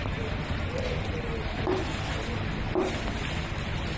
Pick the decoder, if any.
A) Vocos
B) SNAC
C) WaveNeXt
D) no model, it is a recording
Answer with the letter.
D